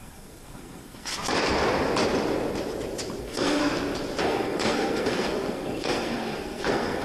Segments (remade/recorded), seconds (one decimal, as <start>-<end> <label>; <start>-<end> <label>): 0.0-1.1 remade; 1.1-3.2 recorded; 3.2-3.6 remade; 3.6-4.2 recorded; 4.2-7.0 remade